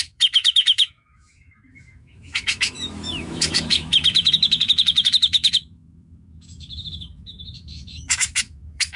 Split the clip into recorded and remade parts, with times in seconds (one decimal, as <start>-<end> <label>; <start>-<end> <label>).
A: 0.0-9.0 remade

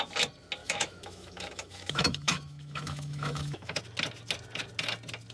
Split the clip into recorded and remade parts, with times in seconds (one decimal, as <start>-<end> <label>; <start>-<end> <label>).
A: 0.0-0.6 recorded; 0.6-3.8 remade; 3.8-5.3 recorded

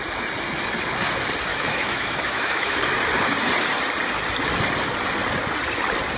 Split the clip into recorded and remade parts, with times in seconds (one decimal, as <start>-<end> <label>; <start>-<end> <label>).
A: 0.0-1.5 recorded; 1.5-2.8 remade; 2.8-6.2 recorded

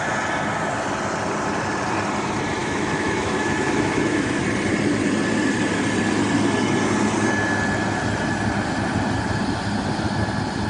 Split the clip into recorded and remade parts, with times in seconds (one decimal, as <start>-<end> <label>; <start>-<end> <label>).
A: 0.0-2.6 recorded; 2.6-4.4 remade; 4.4-10.7 recorded

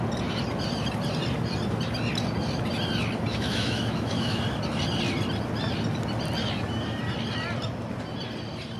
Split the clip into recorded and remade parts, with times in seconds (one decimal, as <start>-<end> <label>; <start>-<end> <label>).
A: 0.0-3.3 recorded; 3.3-4.4 remade; 4.4-8.8 recorded

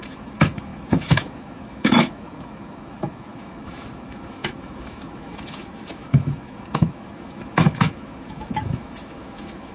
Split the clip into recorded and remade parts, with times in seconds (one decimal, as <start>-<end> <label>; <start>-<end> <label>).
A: 0.0-9.7 remade